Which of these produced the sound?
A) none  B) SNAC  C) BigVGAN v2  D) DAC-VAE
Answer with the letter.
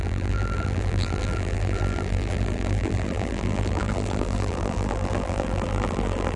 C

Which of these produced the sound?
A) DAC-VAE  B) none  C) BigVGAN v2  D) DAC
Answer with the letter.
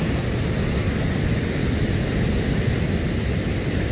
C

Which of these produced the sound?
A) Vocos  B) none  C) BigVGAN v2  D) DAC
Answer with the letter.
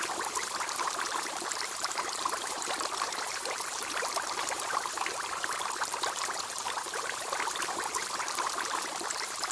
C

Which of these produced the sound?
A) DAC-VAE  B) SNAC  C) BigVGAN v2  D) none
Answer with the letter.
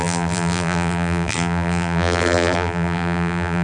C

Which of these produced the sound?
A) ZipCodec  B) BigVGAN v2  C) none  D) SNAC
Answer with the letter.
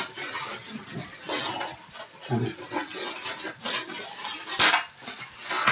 C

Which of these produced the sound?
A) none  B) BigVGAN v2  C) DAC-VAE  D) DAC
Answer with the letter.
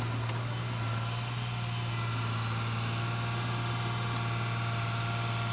A